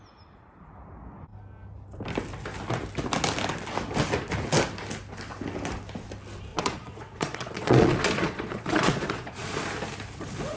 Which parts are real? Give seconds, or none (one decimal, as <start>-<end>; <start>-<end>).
0.0-6.5; 9.5-10.6